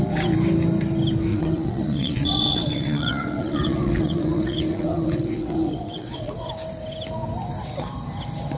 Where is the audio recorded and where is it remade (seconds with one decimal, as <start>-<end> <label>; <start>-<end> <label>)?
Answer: 0.0-1.3 recorded; 1.3-6.5 remade; 6.5-8.6 recorded

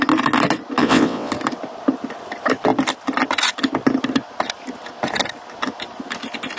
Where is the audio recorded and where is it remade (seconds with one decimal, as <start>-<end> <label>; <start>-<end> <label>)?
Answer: 0.0-0.8 recorded; 0.8-1.3 remade; 1.3-6.6 recorded

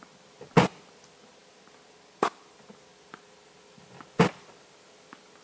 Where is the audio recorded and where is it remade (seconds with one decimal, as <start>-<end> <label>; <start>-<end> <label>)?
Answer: 0.0-5.4 recorded

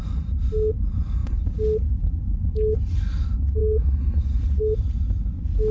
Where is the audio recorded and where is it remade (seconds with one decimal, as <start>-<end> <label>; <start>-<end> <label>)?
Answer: 0.0-5.7 recorded

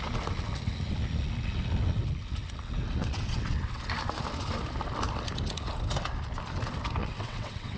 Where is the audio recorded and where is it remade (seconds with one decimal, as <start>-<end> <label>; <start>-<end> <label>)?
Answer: 0.0-3.0 recorded; 3.0-3.8 remade; 3.8-7.0 recorded; 7.0-7.8 remade